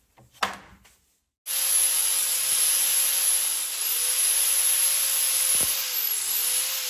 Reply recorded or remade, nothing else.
recorded